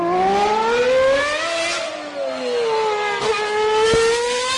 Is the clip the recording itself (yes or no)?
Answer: yes